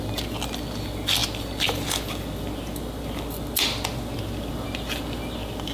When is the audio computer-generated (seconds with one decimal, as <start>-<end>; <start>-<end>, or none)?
none